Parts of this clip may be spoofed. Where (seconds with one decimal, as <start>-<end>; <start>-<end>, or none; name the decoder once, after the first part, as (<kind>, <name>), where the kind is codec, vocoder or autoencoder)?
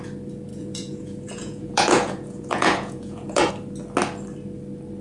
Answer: 0.5-3.5 (vocoder, Vocos)